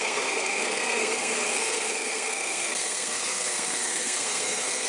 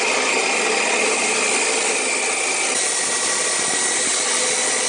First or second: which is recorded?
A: second